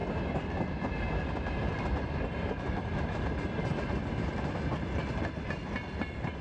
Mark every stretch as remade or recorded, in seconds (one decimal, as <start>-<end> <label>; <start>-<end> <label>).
0.0-6.4 recorded